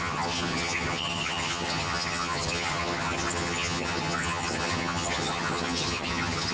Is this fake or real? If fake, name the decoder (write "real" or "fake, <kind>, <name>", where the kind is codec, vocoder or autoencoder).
fake, vocoder, HiFi-GAN